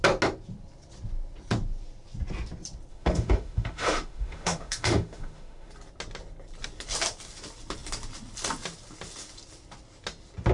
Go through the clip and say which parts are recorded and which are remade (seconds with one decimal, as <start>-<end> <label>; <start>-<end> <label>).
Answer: 0.0-2.9 recorded; 2.9-5.7 remade; 5.7-10.5 recorded